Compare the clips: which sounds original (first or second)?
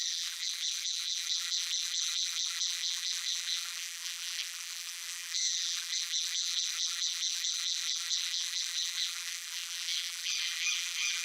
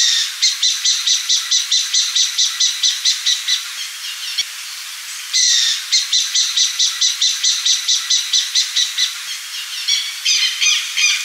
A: second